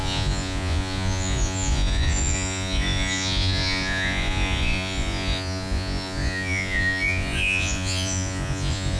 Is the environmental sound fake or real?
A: fake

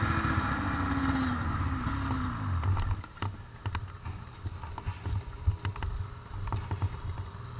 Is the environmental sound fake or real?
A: real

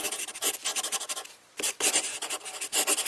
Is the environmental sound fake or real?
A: real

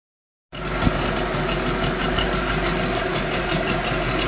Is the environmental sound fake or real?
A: real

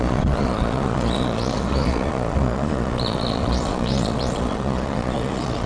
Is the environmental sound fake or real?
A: fake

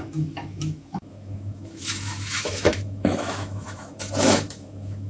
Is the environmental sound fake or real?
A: fake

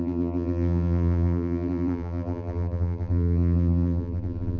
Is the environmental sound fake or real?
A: fake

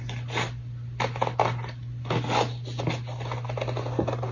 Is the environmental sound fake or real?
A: real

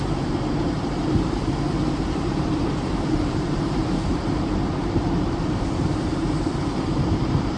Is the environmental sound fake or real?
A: fake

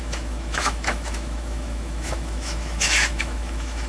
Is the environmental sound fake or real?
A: fake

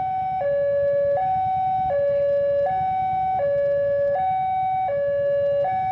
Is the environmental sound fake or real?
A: real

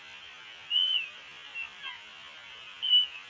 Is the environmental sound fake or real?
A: real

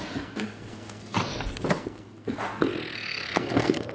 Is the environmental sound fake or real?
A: fake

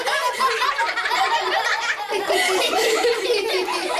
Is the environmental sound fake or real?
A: real